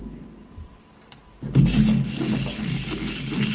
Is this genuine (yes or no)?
yes